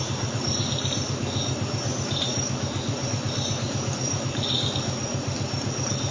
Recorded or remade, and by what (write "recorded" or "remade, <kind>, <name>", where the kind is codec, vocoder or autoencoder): recorded